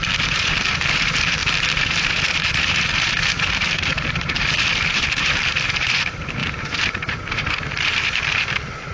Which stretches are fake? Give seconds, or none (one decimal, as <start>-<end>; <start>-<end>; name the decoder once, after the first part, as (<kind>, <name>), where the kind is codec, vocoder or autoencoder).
0.0-8.9 (vocoder, BigVGAN v2)